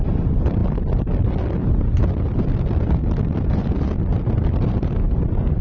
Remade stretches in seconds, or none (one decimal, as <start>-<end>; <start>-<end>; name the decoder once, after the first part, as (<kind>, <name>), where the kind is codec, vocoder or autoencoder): none